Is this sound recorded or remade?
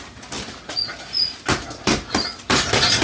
recorded